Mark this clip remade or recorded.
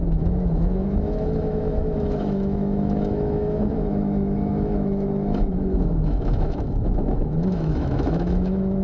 remade